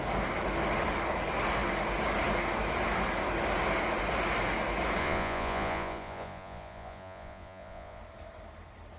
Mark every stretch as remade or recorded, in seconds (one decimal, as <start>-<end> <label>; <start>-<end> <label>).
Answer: 0.0-5.0 recorded; 5.0-8.0 remade; 8.0-9.0 recorded